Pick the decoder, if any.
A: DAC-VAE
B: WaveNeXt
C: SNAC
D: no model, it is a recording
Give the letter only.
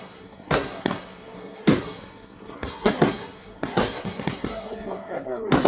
C